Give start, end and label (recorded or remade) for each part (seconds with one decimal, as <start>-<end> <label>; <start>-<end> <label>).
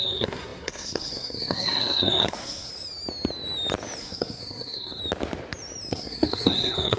0.0-2.7 remade; 2.7-4.0 recorded; 4.0-5.0 remade; 5.0-5.9 recorded; 5.9-7.0 remade